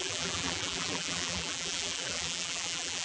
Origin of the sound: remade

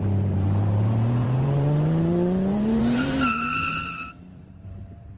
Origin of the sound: remade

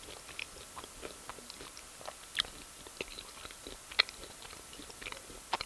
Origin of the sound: recorded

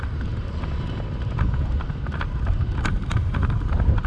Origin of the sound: remade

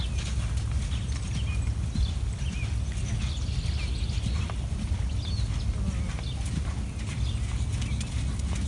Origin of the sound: recorded